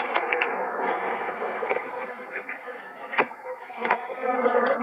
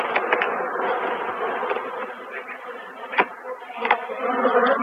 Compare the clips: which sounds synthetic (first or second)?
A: first